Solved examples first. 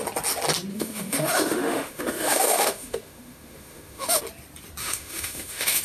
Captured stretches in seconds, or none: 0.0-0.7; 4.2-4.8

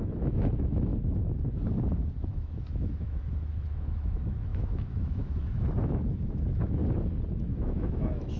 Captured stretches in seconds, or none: 0.9-2.3; 6.8-7.3

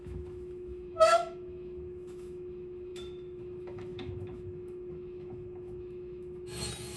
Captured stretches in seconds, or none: none

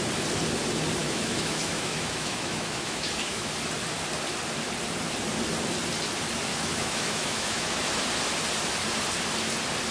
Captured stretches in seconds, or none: 0.0-1.0; 3.5-6.5; 7.8-9.9

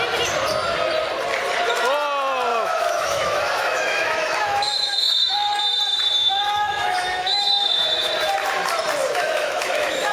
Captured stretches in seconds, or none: 0.0-2.5; 5.6-6.2; 8.1-9.0

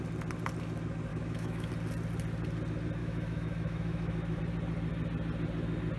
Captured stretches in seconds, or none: 0.0-1.1; 1.7-3.0; 4.4-6.0